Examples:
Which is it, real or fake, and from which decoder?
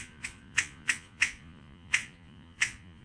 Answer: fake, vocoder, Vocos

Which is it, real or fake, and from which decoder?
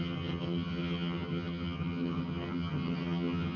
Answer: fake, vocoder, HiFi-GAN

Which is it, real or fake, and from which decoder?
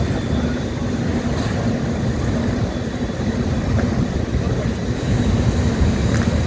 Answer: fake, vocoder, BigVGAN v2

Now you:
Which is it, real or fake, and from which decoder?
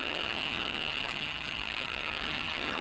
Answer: fake, vocoder, HiFi-GAN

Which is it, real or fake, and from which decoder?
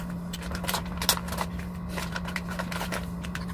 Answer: real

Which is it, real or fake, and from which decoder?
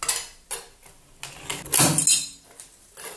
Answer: real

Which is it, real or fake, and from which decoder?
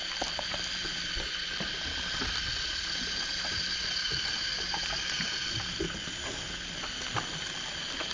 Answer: real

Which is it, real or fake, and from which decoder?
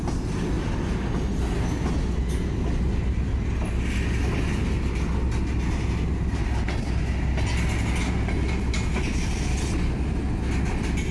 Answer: real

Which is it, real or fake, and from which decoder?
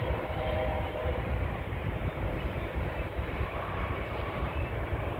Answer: fake, vocoder, BigVGAN v2